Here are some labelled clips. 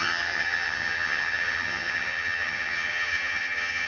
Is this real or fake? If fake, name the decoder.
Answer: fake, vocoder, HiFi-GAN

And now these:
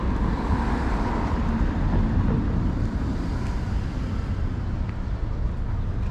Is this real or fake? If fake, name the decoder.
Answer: real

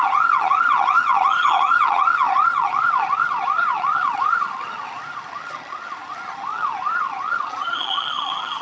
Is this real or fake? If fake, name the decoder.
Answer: fake, vocoder, HiFi-GAN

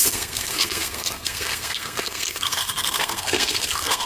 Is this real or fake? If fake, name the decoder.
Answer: fake, codec, SNAC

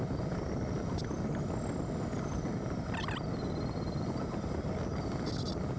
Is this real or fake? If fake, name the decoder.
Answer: real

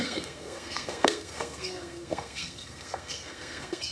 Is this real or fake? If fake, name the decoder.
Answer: fake, codec, SNAC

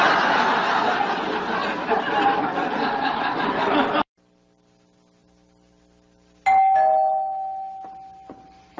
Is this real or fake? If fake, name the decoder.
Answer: real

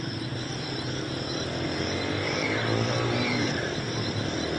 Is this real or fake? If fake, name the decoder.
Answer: fake, vocoder, BigVGAN v2